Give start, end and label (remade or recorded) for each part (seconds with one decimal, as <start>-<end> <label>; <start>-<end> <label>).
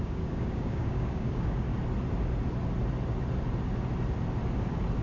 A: 0.0-1.7 remade; 1.7-5.0 recorded